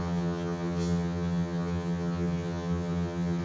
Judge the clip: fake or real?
fake